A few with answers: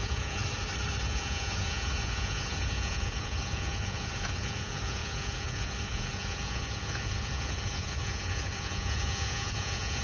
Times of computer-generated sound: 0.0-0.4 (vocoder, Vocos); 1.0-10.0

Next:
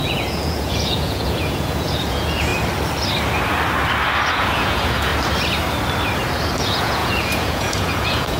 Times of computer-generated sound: 0.0-2.5 (vocoder, Vocos); 4.3-5.1; 6.6-8.4

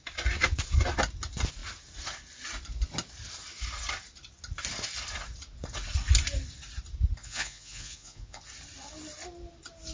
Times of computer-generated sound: 7.2-8.4 (vocoder, Vocos)